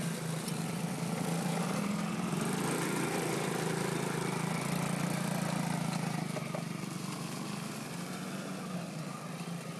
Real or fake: real